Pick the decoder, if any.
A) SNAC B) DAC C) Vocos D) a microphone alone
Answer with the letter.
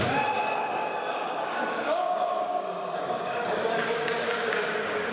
B